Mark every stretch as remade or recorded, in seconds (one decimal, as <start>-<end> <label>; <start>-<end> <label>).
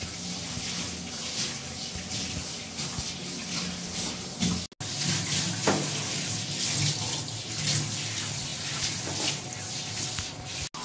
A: 0.0-10.8 recorded